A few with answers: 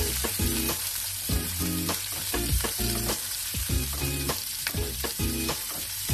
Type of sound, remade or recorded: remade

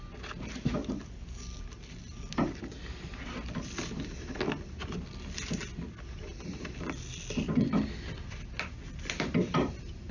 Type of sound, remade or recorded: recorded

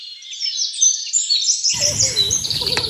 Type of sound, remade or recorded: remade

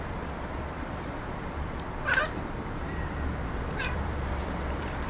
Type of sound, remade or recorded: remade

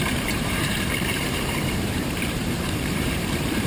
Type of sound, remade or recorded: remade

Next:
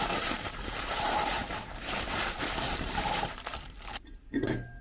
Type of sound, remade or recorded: remade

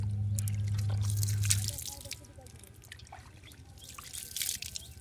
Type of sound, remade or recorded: recorded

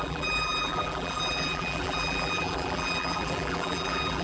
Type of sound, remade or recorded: remade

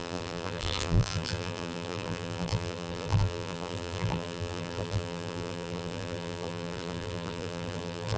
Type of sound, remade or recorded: remade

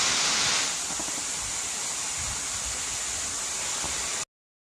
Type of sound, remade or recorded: recorded